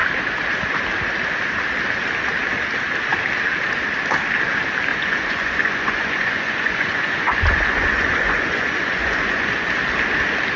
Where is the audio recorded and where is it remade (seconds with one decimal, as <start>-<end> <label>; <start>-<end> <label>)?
0.0-4.9 recorded; 4.9-9.7 remade; 9.7-10.6 recorded